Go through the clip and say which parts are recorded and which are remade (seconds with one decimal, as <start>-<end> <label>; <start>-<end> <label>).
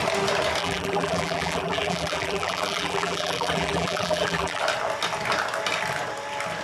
0.0-0.6 recorded; 0.6-4.6 remade; 4.6-6.6 recorded